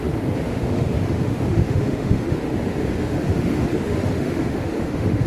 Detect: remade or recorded remade